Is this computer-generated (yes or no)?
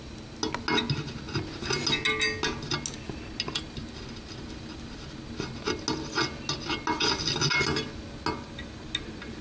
no